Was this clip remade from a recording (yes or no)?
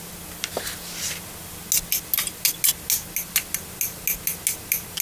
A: no